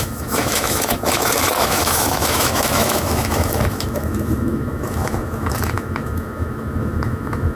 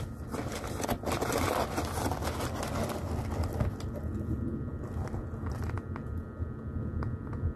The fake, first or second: first